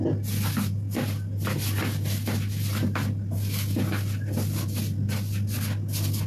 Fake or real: real